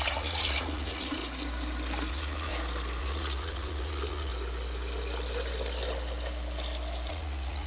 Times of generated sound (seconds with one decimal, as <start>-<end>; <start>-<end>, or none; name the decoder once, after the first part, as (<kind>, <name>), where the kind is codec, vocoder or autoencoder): 0.0-1.2 (vocoder, Vocos); 2.1-2.5; 3.0-4.3; 7.1-7.7